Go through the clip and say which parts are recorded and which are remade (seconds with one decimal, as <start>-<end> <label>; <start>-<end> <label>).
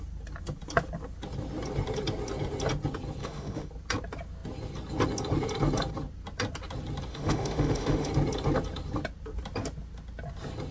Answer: 0.0-3.2 recorded; 3.2-3.7 remade; 3.7-7.1 recorded; 7.1-8.1 remade; 8.1-10.7 recorded